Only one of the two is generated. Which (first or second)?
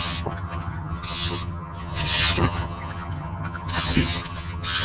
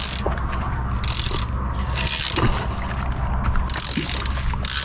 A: first